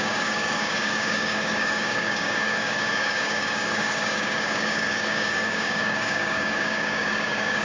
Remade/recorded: remade